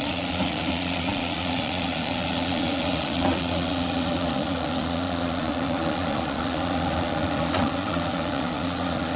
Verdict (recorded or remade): remade